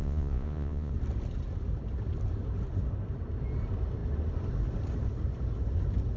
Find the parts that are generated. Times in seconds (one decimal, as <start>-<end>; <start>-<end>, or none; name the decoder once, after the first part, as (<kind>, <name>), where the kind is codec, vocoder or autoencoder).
0.0-0.9 (vocoder, Vocos)